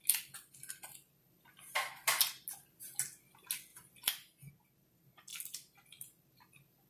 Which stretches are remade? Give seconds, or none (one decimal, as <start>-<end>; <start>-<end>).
none